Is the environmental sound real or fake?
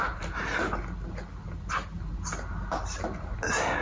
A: real